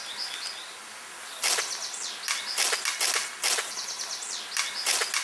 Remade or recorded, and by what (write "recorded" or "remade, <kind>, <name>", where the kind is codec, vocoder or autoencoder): recorded